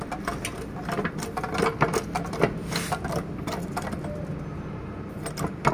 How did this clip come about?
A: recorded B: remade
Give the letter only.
A